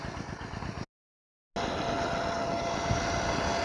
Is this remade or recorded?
recorded